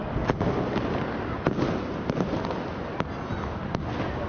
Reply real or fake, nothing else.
real